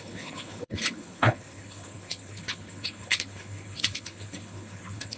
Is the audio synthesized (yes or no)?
yes